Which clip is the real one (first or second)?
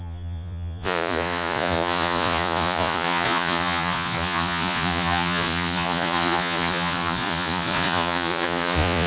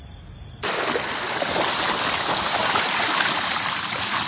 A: second